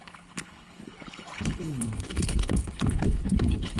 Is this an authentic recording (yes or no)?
no